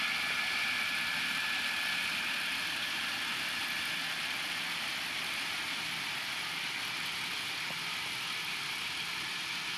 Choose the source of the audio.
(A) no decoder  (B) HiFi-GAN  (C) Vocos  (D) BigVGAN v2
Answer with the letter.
A